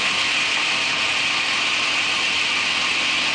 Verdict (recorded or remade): recorded